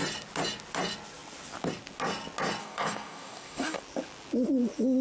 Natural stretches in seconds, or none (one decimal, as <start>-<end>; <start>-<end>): 0.0-2.6; 3.8-5.0